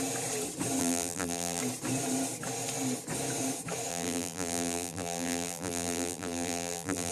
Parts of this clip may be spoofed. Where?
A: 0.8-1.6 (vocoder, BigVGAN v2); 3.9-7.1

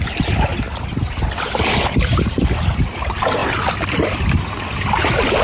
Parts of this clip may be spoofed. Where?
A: 0.0-0.5 (vocoder, BigVGAN v2); 1.7-3.4; 4.6-5.4